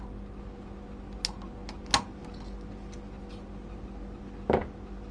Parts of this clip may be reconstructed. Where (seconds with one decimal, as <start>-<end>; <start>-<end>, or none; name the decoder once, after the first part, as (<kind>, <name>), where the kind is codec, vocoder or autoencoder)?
none